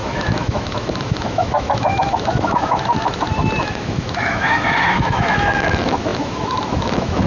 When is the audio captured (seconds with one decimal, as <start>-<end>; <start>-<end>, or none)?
none